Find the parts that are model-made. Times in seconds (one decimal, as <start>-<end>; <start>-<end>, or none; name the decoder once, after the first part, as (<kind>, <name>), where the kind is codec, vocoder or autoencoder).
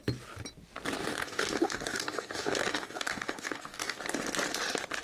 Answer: 1.0-4.0 (codec, DAC)